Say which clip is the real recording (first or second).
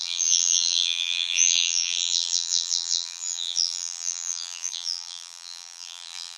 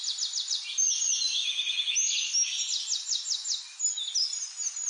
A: second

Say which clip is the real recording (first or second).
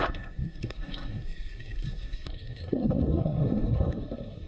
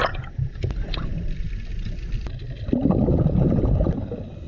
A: second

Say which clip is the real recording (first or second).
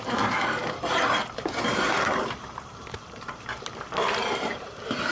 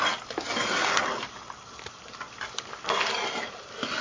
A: second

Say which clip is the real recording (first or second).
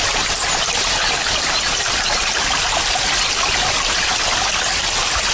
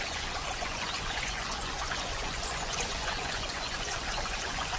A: first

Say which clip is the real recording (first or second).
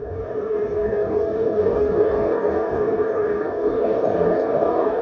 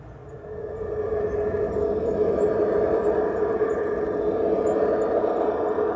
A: second